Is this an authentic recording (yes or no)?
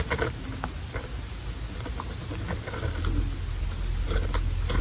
yes